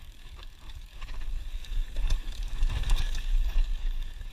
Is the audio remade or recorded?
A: remade